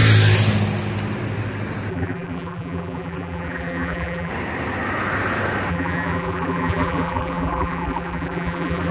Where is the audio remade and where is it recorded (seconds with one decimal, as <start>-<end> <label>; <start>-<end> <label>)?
0.0-1.9 recorded; 1.9-4.3 remade; 4.3-5.7 recorded; 5.7-8.9 remade